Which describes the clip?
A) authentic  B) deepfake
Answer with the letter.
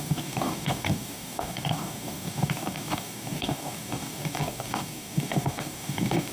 B